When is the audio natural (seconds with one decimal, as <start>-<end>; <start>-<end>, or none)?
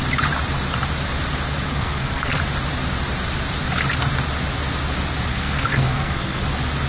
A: 0.0-1.7; 2.4-5.3; 6.4-6.9